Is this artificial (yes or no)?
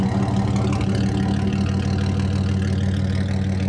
no